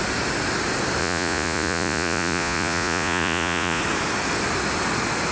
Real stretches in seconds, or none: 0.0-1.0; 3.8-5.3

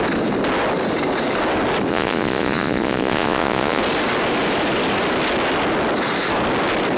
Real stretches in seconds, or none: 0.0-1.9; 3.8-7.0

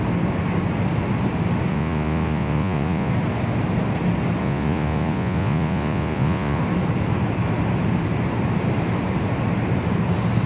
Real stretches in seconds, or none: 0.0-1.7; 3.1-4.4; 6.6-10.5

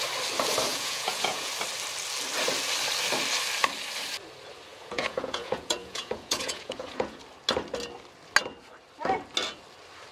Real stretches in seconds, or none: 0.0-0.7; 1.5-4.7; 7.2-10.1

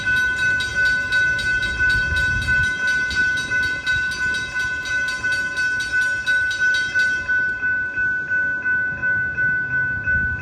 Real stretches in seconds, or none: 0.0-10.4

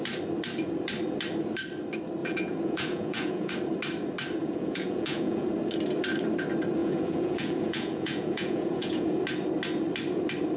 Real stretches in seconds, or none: 0.0-2.2; 3.5-4.4; 5.5-6.8; 9.2-10.6

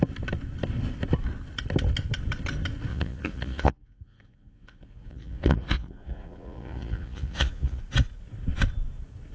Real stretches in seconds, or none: 0.0-2.9; 7.8-9.3